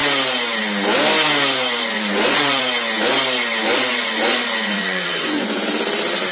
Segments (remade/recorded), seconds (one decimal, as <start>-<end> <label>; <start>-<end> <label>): 0.0-1.8 recorded; 1.8-2.6 remade; 2.6-3.9 recorded; 3.9-5.7 remade; 5.7-6.3 recorded